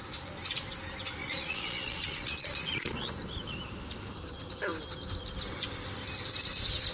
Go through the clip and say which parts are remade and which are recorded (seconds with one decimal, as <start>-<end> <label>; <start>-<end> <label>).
0.0-1.2 recorded; 1.2-3.1 remade; 3.1-6.9 recorded